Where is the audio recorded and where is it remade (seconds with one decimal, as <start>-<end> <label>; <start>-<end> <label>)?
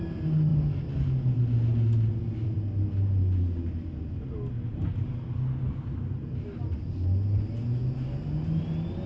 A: 0.0-9.1 recorded